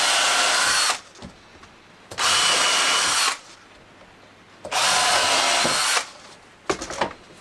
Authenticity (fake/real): real